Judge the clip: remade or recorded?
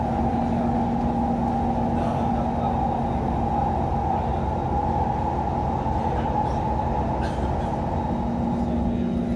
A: recorded